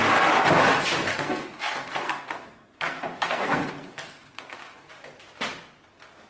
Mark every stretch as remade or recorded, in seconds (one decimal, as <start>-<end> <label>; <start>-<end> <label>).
0.0-1.1 recorded; 1.1-4.9 remade; 4.9-6.3 recorded